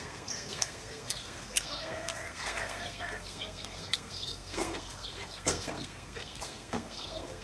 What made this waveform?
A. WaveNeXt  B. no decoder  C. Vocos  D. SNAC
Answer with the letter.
D